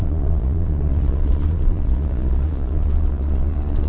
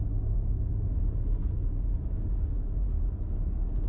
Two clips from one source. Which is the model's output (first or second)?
first